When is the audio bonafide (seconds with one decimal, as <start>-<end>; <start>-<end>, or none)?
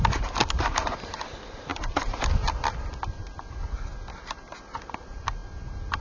0.0-1.7; 2.2-6.0